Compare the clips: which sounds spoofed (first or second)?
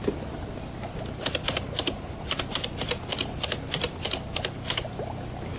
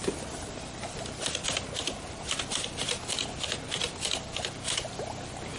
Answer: second